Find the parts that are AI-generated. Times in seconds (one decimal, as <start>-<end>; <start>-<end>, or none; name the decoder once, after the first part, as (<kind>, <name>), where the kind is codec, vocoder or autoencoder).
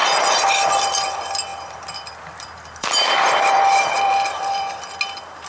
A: 0.0-1.1 (vocoder, BigVGAN v2); 1.5-4.6